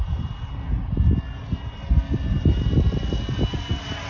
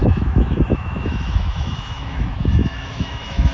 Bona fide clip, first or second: first